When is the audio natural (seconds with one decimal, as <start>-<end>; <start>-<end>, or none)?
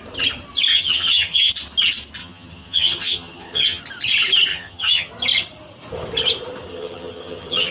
0.0-0.7; 1.5-2.2; 3.8-4.5; 5.1-6.7